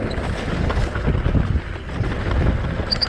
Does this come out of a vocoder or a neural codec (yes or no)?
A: no